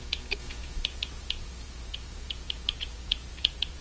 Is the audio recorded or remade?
remade